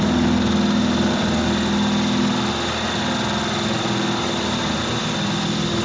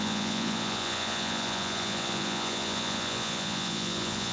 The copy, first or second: second